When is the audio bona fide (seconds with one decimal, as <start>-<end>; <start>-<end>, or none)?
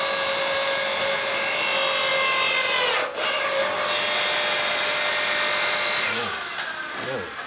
0.0-7.5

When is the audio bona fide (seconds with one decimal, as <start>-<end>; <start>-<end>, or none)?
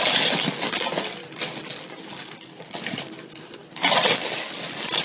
0.0-5.0